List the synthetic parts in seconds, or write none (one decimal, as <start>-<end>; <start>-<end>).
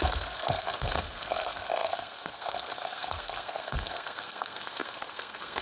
0.0-5.6